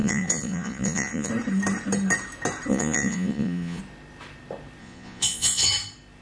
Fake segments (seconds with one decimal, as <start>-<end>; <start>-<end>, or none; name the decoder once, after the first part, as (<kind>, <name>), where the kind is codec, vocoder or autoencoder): 0.0-1.3 (vocoder, Vocos); 2.7-3.8; 4.8-5.7